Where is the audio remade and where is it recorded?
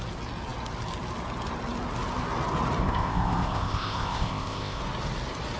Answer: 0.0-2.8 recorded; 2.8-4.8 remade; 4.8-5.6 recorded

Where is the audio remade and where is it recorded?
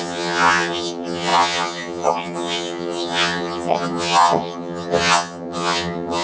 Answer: 0.0-6.2 remade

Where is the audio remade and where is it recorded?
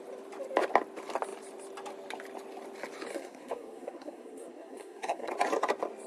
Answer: 0.0-3.1 recorded; 3.1-5.3 remade; 5.3-6.1 recorded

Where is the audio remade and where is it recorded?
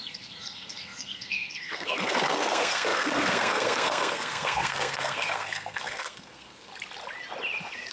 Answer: 0.0-6.7 remade; 6.7-7.9 recorded